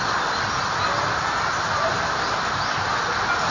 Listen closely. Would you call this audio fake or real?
real